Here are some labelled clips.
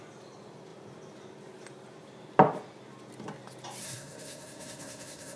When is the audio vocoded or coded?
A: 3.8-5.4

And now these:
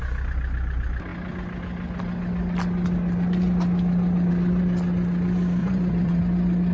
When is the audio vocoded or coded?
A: 5.6-6.2

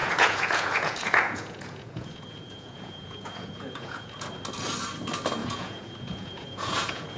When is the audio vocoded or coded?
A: 0.0-4.3; 5.4-7.2